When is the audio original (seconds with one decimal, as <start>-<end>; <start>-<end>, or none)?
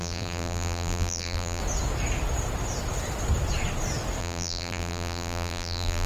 1.6-4.2